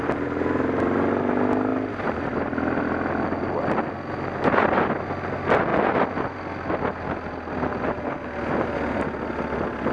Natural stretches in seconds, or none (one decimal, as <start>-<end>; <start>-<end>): 0.0-9.9